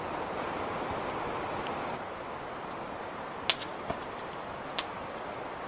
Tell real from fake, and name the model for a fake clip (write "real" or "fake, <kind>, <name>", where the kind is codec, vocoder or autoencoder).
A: real